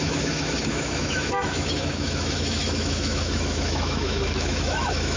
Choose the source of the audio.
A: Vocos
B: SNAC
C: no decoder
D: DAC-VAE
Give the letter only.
D